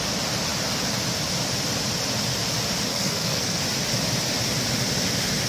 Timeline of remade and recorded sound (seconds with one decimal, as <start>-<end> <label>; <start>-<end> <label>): 0.0-2.9 recorded; 2.9-3.6 remade; 3.6-5.5 recorded